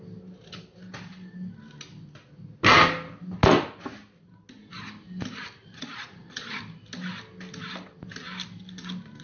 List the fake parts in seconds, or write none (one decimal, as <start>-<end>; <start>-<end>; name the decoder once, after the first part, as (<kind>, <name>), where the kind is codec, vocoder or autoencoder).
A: 5.6-6.6 (vocoder, Vocos)